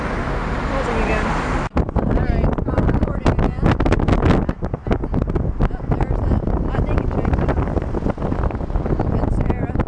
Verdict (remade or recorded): recorded